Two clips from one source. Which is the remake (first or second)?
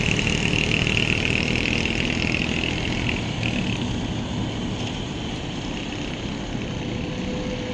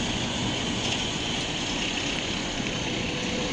second